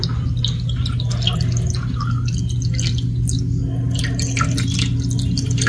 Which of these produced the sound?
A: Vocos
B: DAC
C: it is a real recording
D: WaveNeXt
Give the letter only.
C